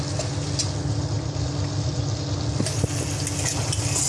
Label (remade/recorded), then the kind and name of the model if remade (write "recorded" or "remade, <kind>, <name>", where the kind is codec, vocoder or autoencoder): recorded